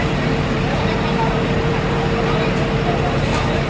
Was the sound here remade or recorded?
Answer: remade